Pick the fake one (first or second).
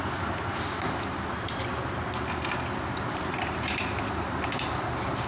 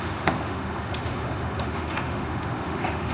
second